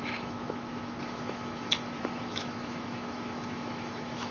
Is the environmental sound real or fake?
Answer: fake